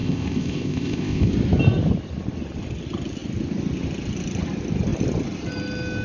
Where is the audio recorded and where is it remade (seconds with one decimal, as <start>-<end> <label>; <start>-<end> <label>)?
0.0-1.3 remade; 1.3-6.0 recorded